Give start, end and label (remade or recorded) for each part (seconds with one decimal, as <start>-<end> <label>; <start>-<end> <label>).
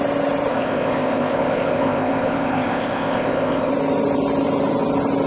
0.0-0.5 recorded; 0.5-3.7 remade; 3.7-5.3 recorded